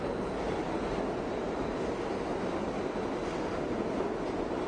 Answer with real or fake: real